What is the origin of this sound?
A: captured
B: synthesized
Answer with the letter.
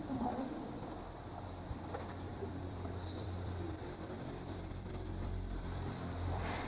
B